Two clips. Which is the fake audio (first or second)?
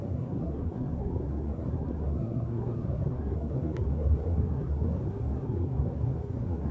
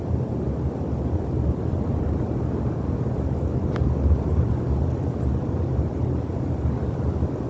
first